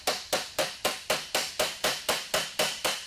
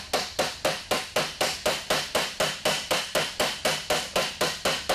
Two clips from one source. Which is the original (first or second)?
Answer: second